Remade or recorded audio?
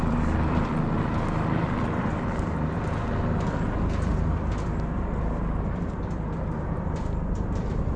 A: remade